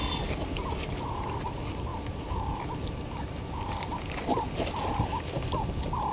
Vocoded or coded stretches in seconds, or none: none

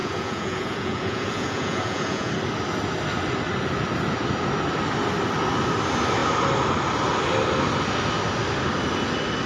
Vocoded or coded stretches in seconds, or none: 0.0-2.3 (vocoder, Vocos)

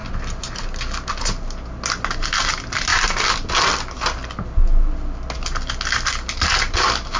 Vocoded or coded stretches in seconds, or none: none